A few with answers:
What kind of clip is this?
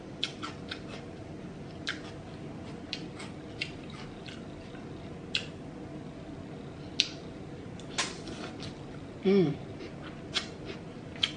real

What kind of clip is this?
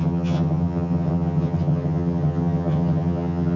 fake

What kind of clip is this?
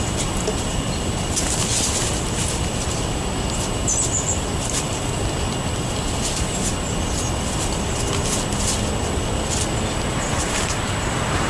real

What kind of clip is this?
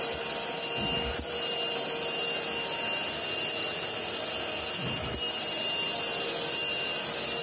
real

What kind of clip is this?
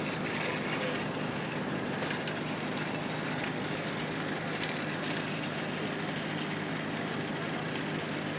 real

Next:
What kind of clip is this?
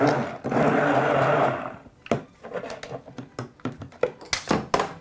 real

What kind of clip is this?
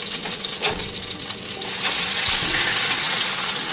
fake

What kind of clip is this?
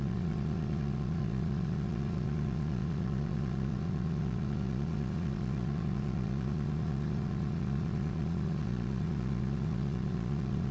fake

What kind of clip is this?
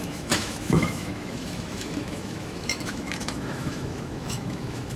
fake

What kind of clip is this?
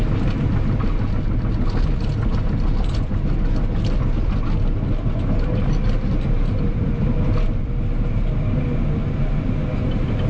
real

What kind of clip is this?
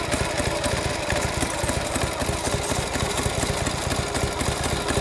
real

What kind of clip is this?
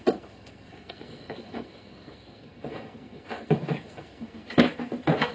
fake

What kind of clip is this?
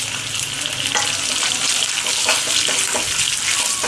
real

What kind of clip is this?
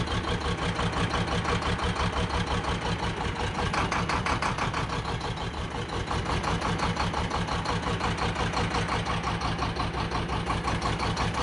real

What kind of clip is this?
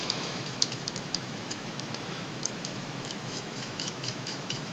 fake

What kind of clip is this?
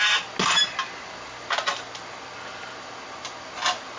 real